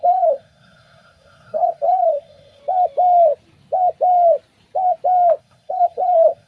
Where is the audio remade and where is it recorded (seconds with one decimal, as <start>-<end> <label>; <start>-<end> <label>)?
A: 0.0-2.6 remade; 2.6-5.4 recorded; 5.4-6.5 remade